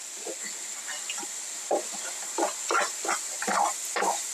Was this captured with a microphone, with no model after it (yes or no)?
yes